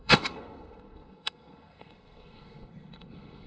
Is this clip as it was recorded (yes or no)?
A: no